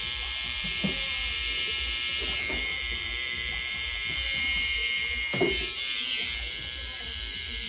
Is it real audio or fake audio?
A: fake